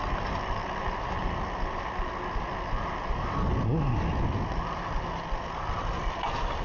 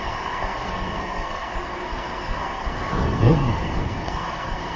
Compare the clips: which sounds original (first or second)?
first